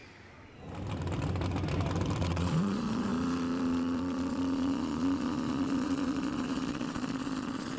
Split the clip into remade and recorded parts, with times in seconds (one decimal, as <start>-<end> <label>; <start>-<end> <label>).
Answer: 0.0-2.2 recorded; 2.2-7.8 remade